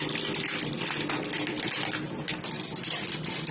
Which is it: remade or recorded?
recorded